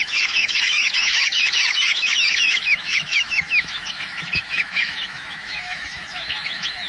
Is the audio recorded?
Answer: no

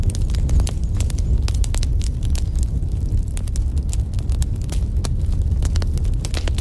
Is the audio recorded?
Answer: yes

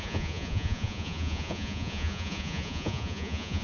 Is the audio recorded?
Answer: no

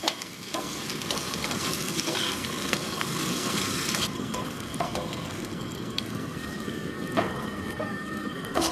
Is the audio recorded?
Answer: no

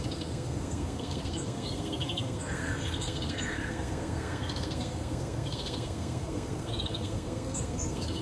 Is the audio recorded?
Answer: no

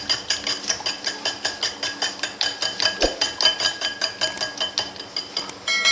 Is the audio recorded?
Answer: yes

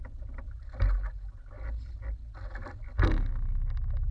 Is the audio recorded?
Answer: yes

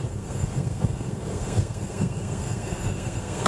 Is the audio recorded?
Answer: no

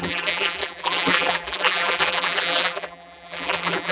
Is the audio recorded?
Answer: no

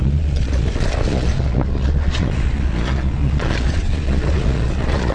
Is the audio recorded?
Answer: no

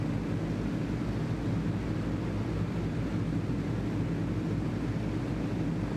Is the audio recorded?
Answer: yes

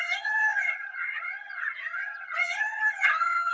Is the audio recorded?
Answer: no